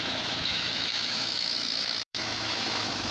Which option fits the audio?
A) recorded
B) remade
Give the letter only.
B